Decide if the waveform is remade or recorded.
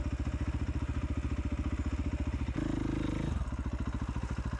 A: recorded